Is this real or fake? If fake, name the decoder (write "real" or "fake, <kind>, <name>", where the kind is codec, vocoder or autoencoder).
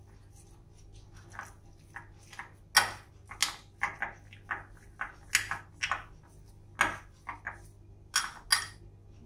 real